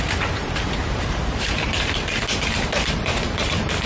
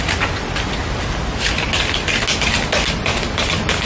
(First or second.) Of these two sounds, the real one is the second